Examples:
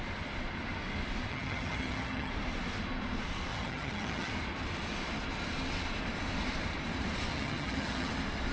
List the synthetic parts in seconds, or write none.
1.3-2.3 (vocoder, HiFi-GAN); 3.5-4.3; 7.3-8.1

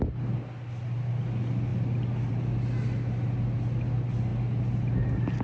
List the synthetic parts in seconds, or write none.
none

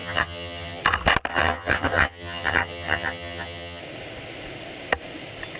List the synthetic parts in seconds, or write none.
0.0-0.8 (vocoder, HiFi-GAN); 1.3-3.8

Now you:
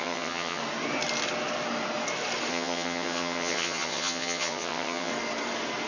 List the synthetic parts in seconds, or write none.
0.0-0.6 (vocoder, HiFi-GAN); 2.5-5.1